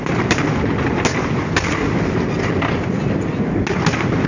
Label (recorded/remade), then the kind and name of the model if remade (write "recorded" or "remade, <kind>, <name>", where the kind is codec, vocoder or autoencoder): recorded